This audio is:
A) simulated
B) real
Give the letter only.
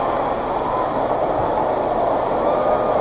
B